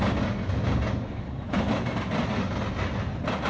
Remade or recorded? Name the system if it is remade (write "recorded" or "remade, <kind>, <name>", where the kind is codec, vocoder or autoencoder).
recorded